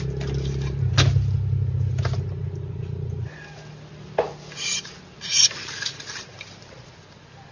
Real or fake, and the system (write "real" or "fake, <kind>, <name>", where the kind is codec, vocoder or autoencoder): real